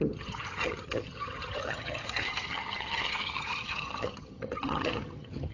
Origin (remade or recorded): remade